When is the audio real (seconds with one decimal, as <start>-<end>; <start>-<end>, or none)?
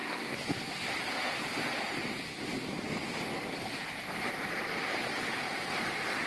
0.6-6.3